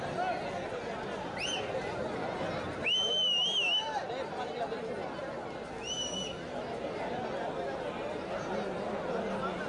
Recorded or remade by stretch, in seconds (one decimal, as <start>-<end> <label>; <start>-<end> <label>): 0.0-9.7 recorded